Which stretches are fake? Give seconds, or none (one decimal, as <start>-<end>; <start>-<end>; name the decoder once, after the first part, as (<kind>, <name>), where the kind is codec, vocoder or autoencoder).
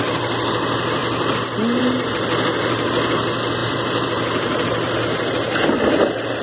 3.6-4.9 (vocoder, BigVGAN v2)